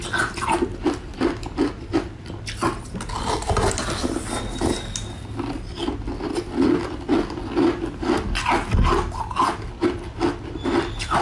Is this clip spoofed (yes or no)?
no